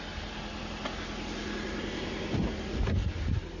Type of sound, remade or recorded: recorded